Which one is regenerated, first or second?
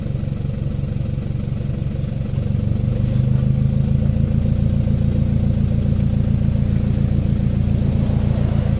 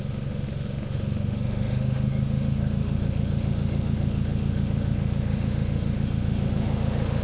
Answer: second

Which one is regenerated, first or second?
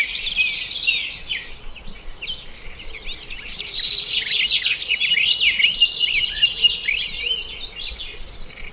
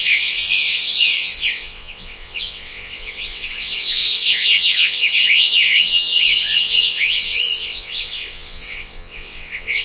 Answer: second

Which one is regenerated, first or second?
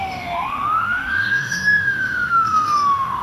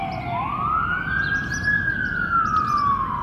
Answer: first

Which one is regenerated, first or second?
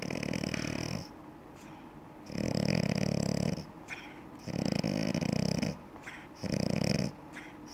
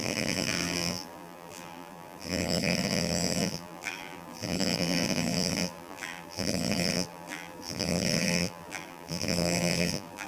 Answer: second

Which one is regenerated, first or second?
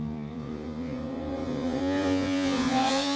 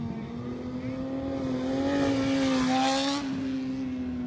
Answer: first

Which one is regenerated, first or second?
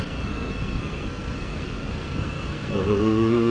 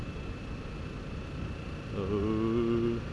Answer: first